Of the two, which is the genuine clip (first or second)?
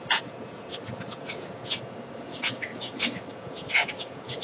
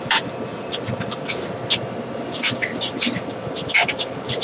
second